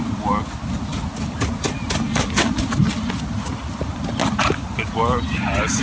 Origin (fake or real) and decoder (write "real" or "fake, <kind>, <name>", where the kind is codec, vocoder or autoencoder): real